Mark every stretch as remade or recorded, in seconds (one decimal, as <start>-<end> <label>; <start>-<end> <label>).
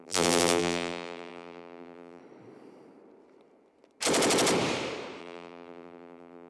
0.0-2.2 remade; 2.2-5.2 recorded; 5.2-6.5 remade